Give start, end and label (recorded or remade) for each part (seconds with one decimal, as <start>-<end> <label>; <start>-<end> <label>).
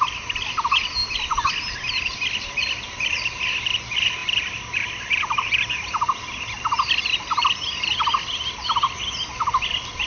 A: 0.0-10.1 recorded